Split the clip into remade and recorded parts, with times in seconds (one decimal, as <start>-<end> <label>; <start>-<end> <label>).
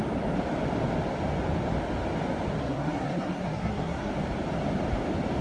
0.0-2.6 recorded; 2.6-4.1 remade; 4.1-5.4 recorded